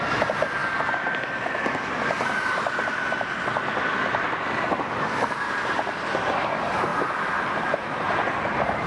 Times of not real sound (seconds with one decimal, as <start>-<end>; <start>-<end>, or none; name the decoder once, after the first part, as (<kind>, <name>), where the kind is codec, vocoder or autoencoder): none